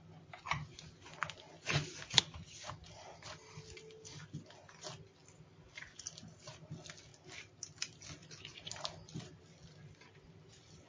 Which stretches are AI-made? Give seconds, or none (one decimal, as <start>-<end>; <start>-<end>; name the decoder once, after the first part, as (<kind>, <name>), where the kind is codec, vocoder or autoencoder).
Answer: 7.1-7.6 (vocoder, BigVGAN v2)